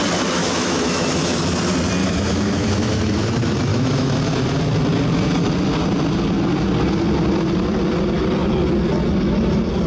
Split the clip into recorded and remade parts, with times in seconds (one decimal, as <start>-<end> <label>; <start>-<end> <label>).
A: 0.0-0.4 recorded; 0.4-1.4 remade; 1.4-2.0 recorded; 2.0-3.3 remade; 3.3-3.7 recorded; 3.7-4.2 remade; 4.2-9.9 recorded